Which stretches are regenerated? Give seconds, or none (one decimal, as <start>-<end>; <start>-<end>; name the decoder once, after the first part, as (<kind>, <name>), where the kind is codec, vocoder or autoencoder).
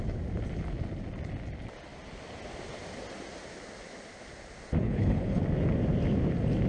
4.8-5.4 (codec, HILCodec)